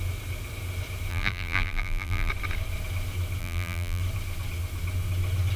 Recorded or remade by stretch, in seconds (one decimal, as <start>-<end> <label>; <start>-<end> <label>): 0.0-1.1 recorded; 1.1-2.3 remade; 2.3-3.4 recorded; 3.4-4.0 remade; 4.0-5.6 recorded